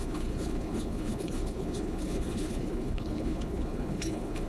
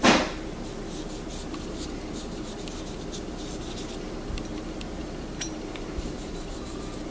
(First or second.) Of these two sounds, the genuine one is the second